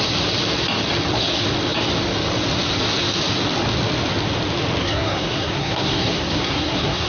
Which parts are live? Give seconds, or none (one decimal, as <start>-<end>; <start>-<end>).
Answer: 0.0-4.8